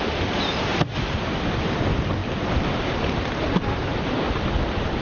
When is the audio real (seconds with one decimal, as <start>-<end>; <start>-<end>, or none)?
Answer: 0.0-5.0